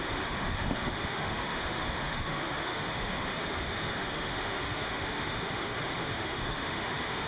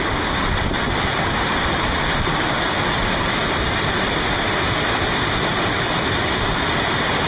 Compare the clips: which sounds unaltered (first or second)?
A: second